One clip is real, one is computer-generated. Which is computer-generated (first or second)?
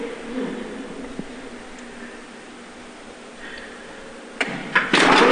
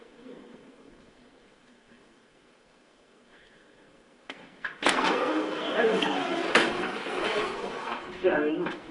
second